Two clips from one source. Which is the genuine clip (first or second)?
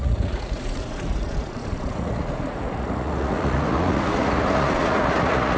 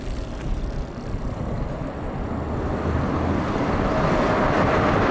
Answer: second